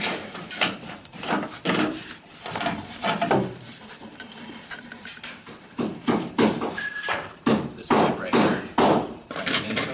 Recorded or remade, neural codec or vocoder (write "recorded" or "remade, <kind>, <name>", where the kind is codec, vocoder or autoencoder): remade, vocoder, BigVGAN v2